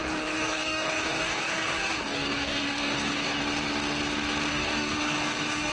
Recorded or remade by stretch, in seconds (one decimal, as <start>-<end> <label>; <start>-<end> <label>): 0.0-3.4 remade; 3.4-4.5 recorded; 4.5-5.7 remade